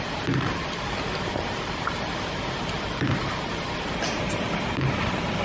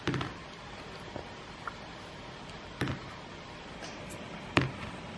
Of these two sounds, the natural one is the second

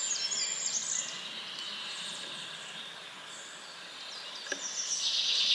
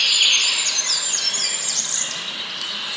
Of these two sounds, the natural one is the first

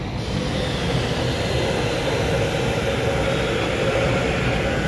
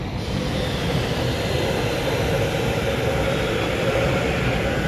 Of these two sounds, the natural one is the first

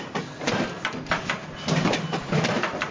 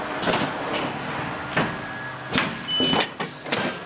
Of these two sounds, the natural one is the second